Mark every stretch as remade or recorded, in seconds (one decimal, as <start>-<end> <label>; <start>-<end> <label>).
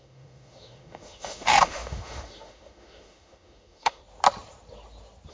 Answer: 0.0-4.0 remade; 4.0-5.3 recorded